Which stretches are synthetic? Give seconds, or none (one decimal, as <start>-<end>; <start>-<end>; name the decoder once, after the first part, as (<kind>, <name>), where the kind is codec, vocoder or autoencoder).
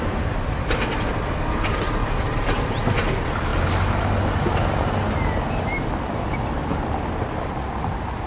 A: none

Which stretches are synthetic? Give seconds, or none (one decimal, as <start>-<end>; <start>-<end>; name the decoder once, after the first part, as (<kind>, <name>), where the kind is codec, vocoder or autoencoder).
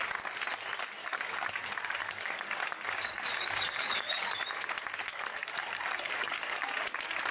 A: 1.0-4.4 (codec, DAC); 5.1-6.8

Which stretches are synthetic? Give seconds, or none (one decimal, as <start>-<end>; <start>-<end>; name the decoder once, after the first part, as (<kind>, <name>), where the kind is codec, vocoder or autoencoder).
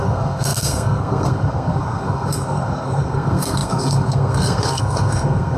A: 0.0-5.6 (codec, SNAC)